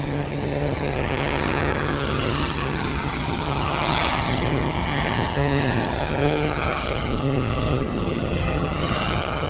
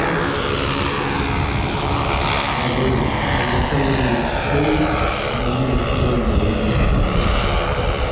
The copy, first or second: first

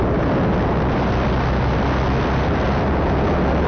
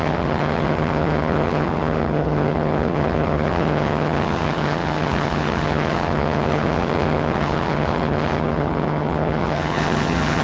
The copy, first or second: second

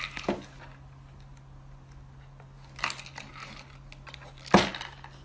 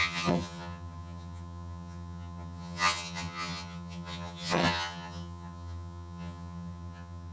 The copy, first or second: second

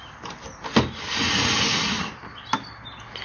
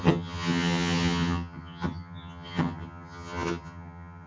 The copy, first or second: second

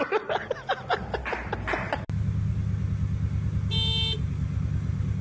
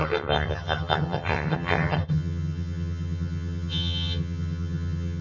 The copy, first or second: second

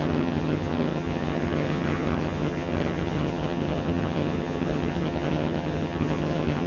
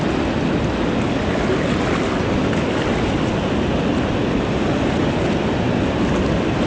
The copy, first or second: first